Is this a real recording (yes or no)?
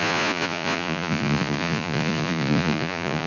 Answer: no